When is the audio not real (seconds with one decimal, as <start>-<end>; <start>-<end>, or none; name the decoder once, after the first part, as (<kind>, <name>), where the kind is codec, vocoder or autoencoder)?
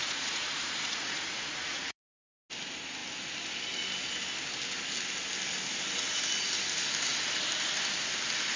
0.0-2.1 (vocoder, Vocos)